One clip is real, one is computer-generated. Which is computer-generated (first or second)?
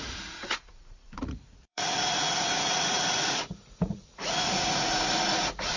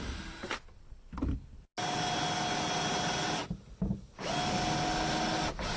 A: first